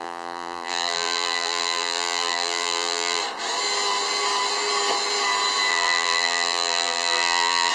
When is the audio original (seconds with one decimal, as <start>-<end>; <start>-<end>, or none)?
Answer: 3.2-5.7